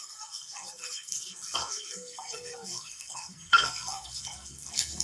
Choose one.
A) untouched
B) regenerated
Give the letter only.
B